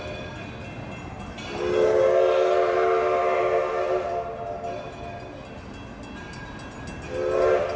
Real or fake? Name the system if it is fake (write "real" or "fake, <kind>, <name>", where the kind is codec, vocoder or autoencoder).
real